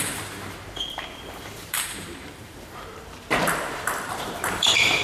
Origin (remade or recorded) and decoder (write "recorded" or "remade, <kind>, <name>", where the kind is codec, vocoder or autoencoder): remade, vocoder, BigVGAN v2